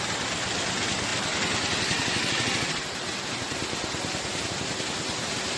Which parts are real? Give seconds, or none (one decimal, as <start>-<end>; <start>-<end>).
0.0-5.6